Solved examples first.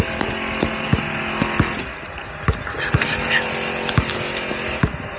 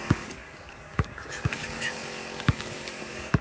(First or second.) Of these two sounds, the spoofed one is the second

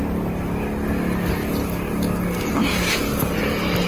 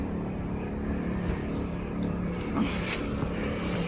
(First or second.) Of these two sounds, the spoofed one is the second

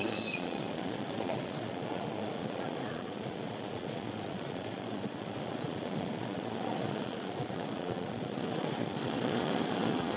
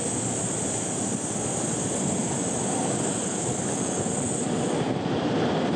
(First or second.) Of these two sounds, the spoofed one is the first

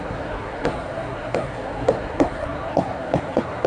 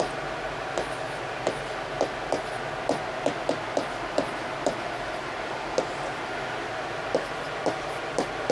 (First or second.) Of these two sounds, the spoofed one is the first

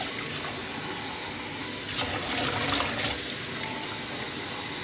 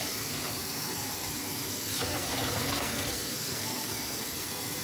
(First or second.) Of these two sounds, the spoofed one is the second